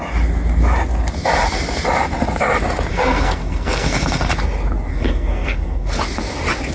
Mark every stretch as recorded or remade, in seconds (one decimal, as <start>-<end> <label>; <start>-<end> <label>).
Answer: 0.0-2.9 recorded; 2.9-4.3 remade; 4.3-4.9 recorded; 4.9-6.0 remade; 6.0-6.7 recorded